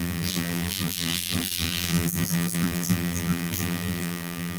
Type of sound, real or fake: fake